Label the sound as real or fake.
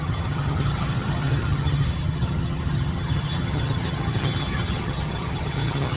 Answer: fake